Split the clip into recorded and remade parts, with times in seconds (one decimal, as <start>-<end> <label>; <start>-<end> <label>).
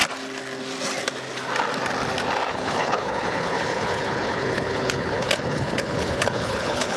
0.0-2.5 recorded; 2.5-7.0 remade